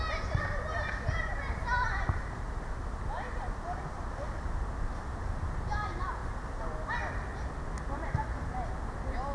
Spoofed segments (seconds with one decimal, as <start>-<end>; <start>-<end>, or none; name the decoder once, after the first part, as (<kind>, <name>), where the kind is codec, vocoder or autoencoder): none